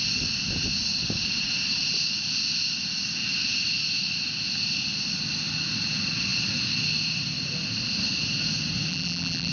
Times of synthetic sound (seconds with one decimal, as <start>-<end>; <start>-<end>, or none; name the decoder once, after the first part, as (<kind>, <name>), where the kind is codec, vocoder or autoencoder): 8.9-9.5 (vocoder, BigVGAN v2)